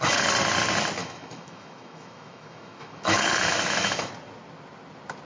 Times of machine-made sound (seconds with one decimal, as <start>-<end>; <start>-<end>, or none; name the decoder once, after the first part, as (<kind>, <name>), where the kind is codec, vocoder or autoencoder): 1.0-4.1 (autoencoder, DAC-VAE)